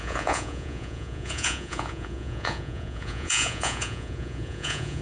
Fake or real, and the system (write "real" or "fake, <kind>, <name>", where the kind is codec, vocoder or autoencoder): fake, vocoder, Vocos